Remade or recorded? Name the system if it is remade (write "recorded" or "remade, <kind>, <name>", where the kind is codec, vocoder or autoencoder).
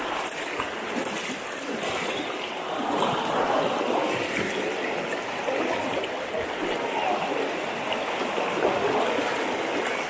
recorded